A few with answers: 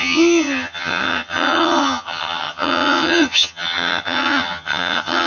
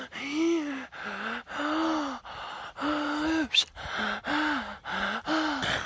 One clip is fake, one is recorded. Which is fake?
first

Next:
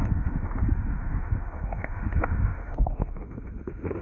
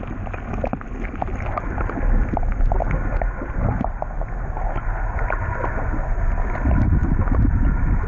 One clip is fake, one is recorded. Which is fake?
first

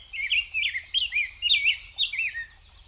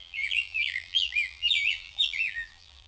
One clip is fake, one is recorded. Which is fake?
second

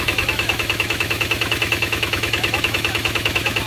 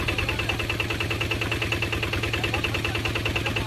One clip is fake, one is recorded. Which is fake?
first